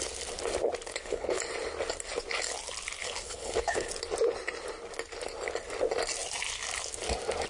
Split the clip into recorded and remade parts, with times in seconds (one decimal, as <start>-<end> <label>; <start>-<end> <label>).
0.0-0.9 recorded; 0.9-1.4 remade; 1.4-3.0 recorded; 3.0-3.9 remade; 3.9-7.5 recorded